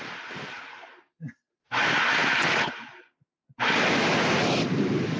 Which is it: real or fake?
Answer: real